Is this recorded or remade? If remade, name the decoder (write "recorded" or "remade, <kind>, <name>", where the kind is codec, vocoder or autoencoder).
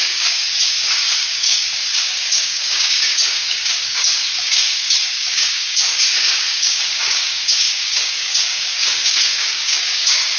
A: remade, codec, DAC